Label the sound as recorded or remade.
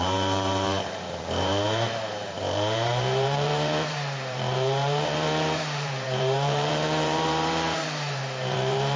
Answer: remade